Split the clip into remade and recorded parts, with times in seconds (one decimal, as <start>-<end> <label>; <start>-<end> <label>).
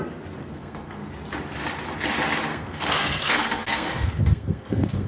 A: 0.0-0.4 recorded; 0.4-1.1 remade; 1.1-2.5 recorded; 2.5-5.1 remade